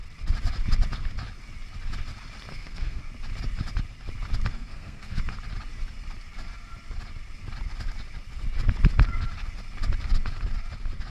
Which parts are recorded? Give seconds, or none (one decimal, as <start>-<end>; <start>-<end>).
0.0-2.5; 3.0-4.5; 5.2-11.1